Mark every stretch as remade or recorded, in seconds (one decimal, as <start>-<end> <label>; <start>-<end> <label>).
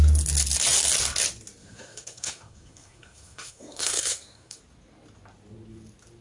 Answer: 0.0-1.6 recorded; 1.6-4.6 remade; 4.6-6.2 recorded